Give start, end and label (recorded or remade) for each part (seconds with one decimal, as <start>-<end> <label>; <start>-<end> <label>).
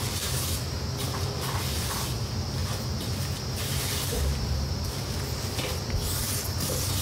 0.0-7.0 recorded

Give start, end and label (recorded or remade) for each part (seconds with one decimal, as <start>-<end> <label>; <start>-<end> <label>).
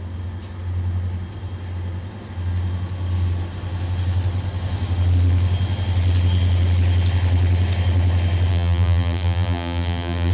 0.0-8.5 recorded; 8.5-10.3 remade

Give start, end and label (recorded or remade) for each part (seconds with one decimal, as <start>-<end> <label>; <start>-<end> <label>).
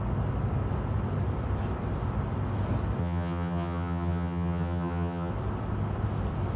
0.0-3.0 recorded; 3.0-5.3 remade; 5.3-6.6 recorded